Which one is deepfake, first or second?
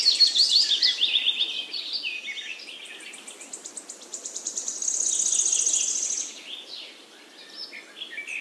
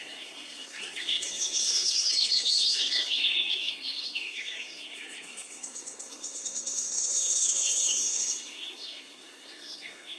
second